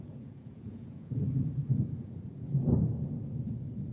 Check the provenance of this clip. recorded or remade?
remade